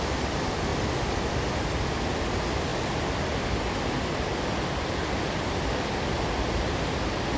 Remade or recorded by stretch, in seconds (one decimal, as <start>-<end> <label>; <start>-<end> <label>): 0.0-7.4 recorded